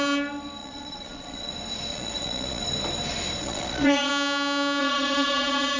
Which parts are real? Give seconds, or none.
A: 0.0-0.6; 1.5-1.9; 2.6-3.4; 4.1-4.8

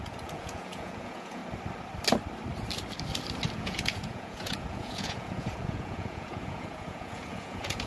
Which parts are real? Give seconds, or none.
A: 1.4-3.5

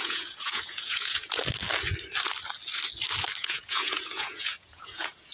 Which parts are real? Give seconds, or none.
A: 1.4-3.4

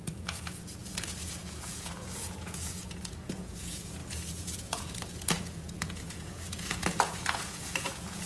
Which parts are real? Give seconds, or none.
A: none

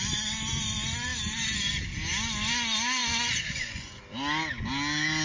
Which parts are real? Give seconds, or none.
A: 0.0-3.0; 4.0-5.2

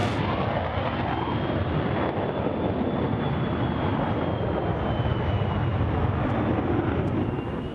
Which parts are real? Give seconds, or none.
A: 0.0-7.7

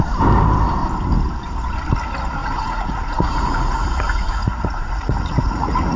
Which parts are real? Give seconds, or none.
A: 0.0-2.4

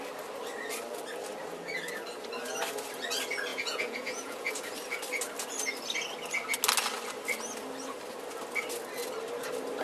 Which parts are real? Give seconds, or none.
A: 0.0-3.5; 4.5-9.8